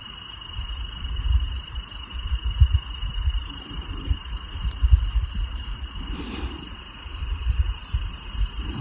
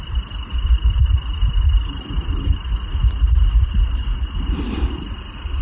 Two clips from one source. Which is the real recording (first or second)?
second